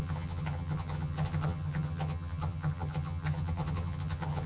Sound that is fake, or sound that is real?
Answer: fake